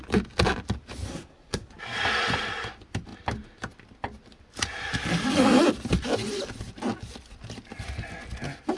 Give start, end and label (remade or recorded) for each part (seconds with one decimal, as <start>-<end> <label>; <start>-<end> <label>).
0.0-1.1 recorded; 1.1-1.7 remade; 1.7-8.8 recorded